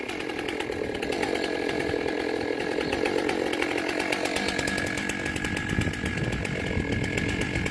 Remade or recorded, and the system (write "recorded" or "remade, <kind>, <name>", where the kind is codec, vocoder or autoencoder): recorded